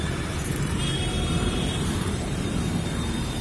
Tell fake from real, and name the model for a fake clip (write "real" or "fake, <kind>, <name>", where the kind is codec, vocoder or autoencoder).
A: fake, vocoder, BigVGAN v2